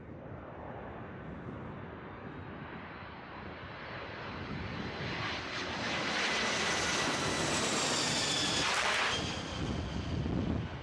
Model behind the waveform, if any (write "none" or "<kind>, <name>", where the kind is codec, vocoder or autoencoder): none